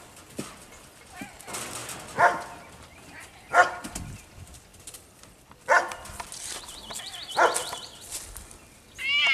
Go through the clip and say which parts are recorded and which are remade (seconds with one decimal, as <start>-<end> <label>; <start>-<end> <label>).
0.0-9.3 recorded